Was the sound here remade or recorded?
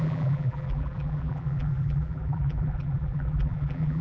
remade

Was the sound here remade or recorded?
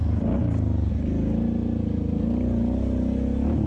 recorded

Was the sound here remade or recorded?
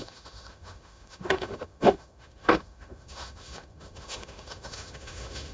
remade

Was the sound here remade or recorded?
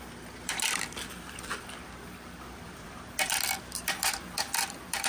remade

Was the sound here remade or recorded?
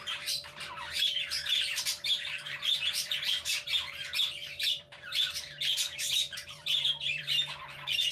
remade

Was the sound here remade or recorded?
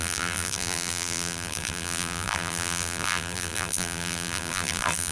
remade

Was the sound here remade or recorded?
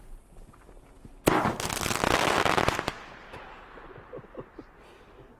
recorded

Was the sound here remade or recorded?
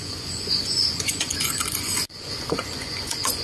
remade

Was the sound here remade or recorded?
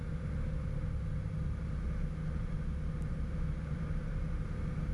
recorded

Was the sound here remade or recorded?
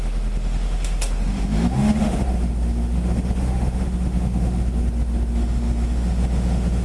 remade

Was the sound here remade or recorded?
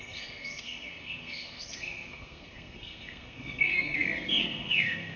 remade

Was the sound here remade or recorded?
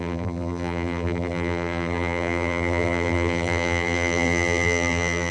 remade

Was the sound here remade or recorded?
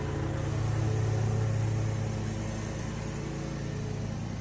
recorded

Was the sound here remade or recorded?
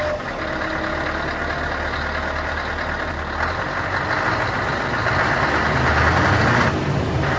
recorded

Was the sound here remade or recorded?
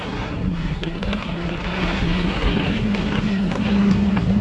remade